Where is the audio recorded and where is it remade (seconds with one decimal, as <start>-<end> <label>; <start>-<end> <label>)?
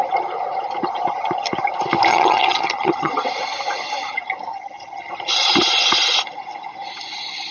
0.0-2.1 recorded; 2.1-3.1 remade; 3.1-4.5 recorded; 4.5-5.1 remade; 5.1-7.5 recorded